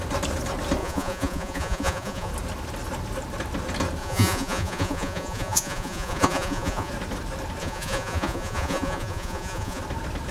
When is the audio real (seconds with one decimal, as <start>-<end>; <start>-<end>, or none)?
0.0-0.8; 2.3-4.0; 6.9-7.6; 9.8-10.3